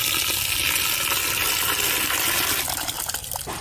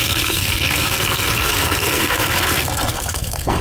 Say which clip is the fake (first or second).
second